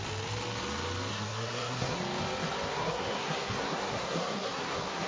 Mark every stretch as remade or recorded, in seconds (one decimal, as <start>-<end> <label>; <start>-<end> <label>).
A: 0.0-1.1 recorded; 1.1-2.0 remade; 2.0-2.7 recorded; 2.7-5.1 remade